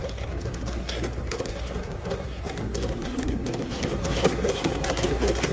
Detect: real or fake fake